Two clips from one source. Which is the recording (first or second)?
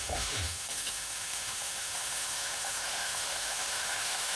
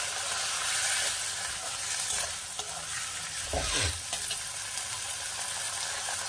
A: second